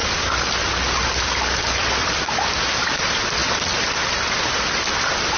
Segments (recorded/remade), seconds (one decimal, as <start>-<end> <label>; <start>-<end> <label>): 0.0-5.4 recorded